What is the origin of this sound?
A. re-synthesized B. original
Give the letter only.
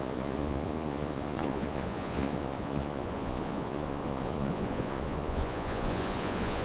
A